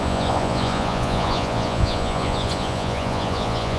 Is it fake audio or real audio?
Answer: fake